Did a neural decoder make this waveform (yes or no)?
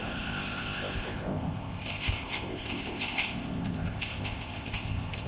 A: yes